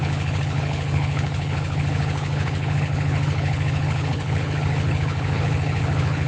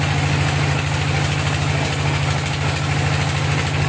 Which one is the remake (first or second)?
first